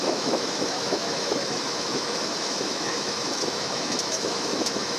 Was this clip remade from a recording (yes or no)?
yes